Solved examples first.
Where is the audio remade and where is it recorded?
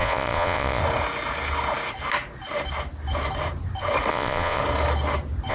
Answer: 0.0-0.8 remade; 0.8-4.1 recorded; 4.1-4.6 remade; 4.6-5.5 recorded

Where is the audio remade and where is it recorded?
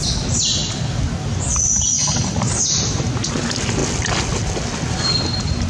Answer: 0.0-5.7 recorded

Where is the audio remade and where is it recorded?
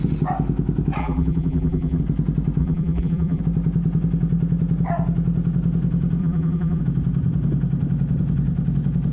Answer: 0.0-1.0 recorded; 1.0-2.0 remade; 2.0-2.6 recorded; 2.6-3.4 remade; 3.4-6.2 recorded; 6.2-6.8 remade; 6.8-9.1 recorded